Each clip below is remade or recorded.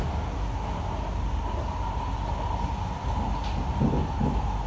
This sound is recorded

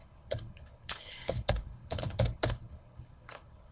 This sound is remade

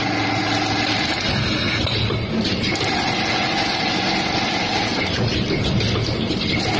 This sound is recorded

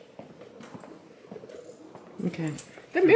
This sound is recorded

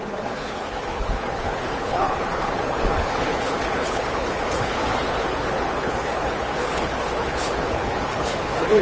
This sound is remade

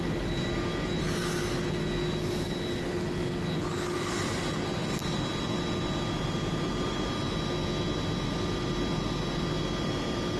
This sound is recorded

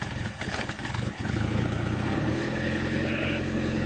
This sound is remade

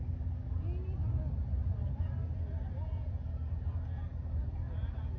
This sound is recorded